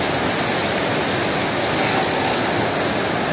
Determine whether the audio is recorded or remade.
recorded